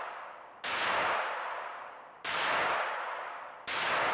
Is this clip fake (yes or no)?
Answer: no